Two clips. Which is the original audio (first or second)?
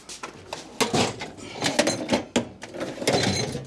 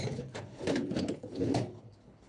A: first